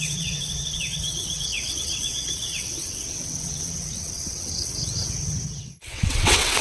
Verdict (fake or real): fake